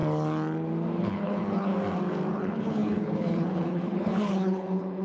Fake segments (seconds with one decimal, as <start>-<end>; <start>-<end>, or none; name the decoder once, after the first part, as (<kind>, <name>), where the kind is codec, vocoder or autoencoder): 1.0-1.7 (codec, HILCodec); 2.3-5.0